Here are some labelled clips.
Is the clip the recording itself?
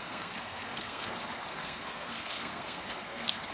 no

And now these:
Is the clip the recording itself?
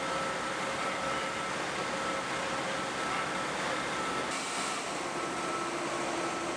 yes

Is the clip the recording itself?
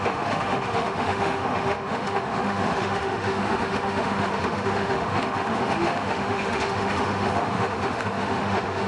no